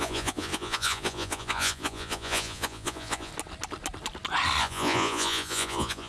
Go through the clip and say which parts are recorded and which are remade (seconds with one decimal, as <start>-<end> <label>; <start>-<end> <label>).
0.0-3.3 remade; 3.3-4.6 recorded; 4.6-6.1 remade